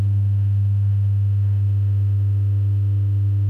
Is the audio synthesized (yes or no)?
yes